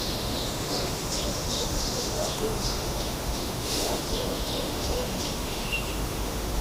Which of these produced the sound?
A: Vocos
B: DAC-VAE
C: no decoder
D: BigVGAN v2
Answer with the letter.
B